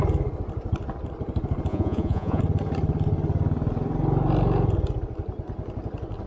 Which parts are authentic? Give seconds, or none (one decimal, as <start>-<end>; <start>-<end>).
0.0-1.7; 2.4-6.3